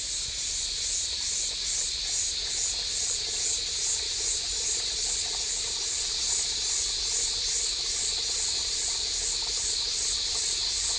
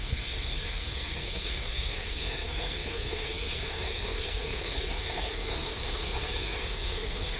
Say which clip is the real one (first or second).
first